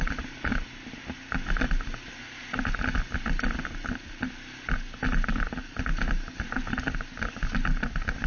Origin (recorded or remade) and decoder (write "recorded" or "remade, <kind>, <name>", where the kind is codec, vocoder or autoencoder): recorded